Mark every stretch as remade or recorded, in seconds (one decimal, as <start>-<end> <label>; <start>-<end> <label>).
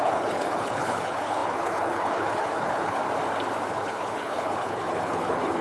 0.0-3.0 remade; 3.0-3.7 recorded; 3.7-5.6 remade